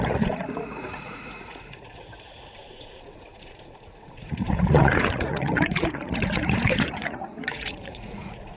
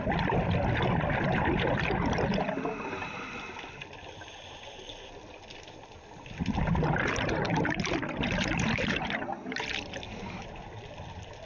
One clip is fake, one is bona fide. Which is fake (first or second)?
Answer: first